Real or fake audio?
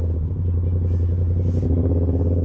real